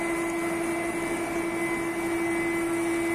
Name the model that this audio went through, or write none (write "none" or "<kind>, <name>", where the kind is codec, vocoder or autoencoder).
none